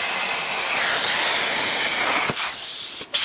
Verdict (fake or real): real